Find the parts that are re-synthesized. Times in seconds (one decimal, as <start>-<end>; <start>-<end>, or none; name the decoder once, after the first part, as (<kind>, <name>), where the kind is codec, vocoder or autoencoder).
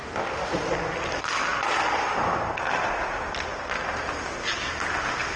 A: 0.0-0.5 (autoencoder, DAC-VAE)